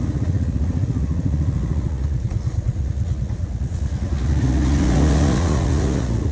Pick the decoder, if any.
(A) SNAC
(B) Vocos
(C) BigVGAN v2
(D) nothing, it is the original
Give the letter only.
B